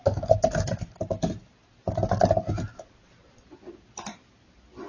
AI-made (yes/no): no